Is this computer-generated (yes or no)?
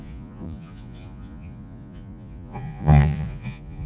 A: yes